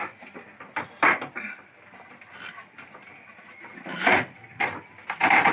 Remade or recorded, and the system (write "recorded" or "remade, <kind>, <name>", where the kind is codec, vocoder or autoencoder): recorded